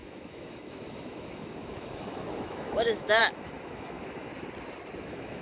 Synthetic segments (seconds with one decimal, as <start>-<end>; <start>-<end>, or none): 0.0-4.3; 5.0-5.4